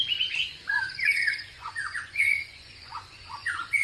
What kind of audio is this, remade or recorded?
remade